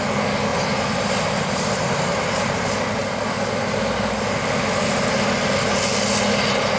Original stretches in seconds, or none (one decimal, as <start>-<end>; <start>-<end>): 0.0-0.5; 2.7-6.8